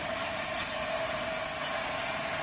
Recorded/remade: recorded